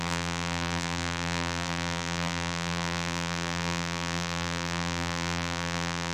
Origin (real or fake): fake